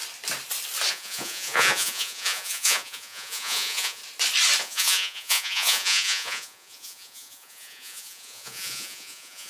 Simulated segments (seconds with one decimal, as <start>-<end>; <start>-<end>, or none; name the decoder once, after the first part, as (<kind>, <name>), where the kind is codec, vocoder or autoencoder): 0.9-4.0 (vocoder, Vocos); 4.6-9.5